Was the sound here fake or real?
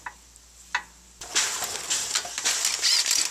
real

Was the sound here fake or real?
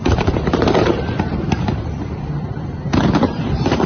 fake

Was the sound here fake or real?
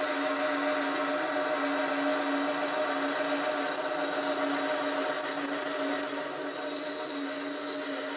real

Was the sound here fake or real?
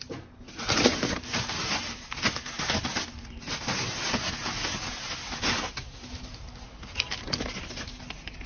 real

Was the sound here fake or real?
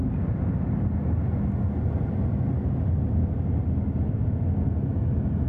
real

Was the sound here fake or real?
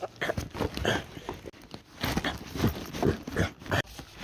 real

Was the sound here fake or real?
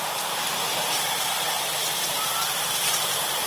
fake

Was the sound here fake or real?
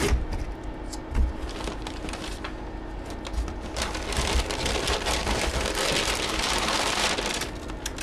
real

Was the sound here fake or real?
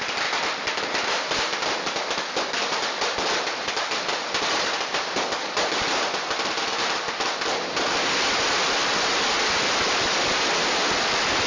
fake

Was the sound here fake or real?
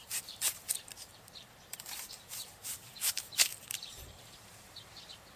fake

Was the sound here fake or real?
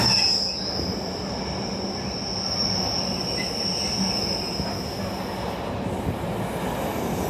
real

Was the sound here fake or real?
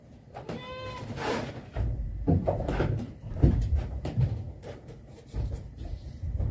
fake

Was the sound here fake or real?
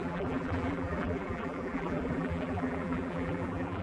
fake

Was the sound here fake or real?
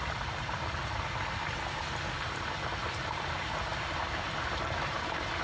fake